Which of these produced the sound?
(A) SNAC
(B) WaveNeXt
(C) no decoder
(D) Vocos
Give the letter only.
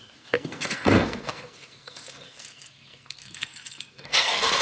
A